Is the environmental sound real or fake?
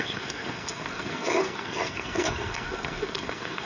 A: fake